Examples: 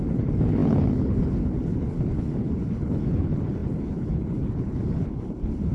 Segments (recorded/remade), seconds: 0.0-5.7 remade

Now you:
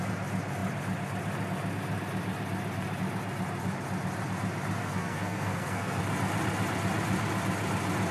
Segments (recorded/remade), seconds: 0.0-4.8 recorded; 4.8-6.0 remade; 6.0-8.1 recorded

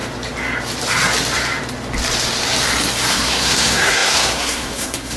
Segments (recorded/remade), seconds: 0.0-3.1 recorded; 3.1-5.2 remade

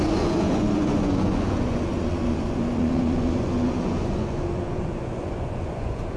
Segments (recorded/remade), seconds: 0.0-6.2 remade

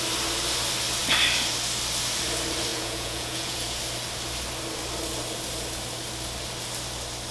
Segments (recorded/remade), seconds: 0.0-2.7 recorded; 2.7-3.8 remade; 3.8-7.3 recorded

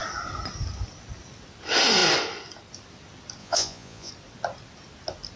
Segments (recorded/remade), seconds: 0.0-3.4 recorded; 3.4-4.1 remade; 4.1-5.4 recorded

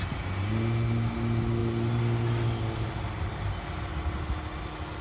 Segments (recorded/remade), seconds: 0.0-5.0 recorded

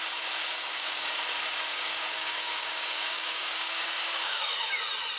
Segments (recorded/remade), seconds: 0.0-0.5 recorded; 0.5-1.1 remade; 1.1-1.7 recorded; 1.7-4.8 remade; 4.8-5.2 recorded